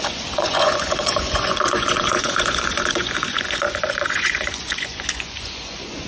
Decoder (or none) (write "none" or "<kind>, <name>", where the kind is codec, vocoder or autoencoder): vocoder, Vocos